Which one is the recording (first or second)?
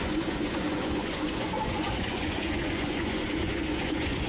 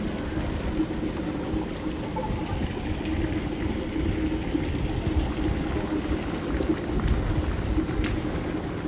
second